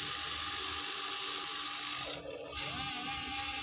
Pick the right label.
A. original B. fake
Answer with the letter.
A